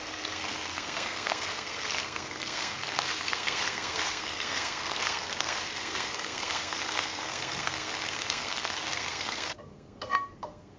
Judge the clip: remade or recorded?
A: remade